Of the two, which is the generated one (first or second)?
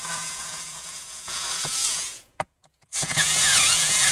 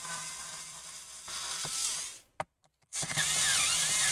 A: first